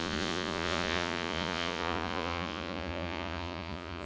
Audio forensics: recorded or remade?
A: remade